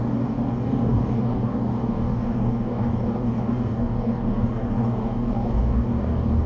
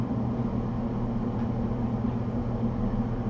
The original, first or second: second